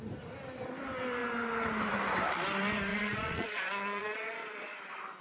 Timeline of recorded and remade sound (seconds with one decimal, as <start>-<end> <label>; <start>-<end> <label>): 0.0-2.9 recorded; 2.9-4.8 remade; 4.8-5.2 recorded

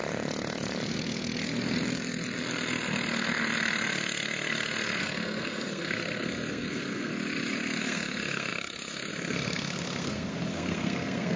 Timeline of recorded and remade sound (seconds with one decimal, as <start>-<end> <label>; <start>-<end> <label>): 0.0-5.0 recorded; 5.0-7.1 remade; 7.1-7.8 recorded; 7.8-11.4 remade